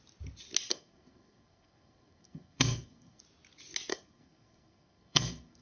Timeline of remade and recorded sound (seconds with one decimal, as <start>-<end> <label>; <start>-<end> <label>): 0.0-0.7 recorded; 0.7-3.2 remade; 3.2-3.9 recorded; 3.9-5.6 remade